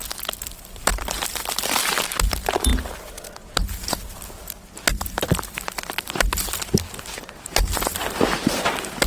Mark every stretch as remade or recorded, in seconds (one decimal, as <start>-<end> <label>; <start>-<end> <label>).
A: 0.0-9.1 recorded